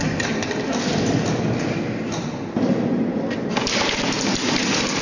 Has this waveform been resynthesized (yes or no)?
no